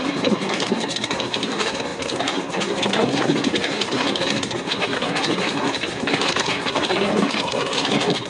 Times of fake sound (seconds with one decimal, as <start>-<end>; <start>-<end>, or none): 0.0-8.3